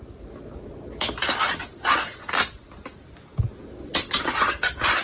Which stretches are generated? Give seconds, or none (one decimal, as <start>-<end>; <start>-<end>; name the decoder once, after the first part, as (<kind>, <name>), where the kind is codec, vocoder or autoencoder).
none